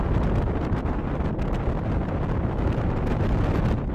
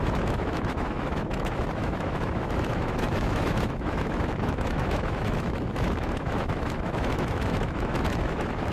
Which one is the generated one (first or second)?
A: second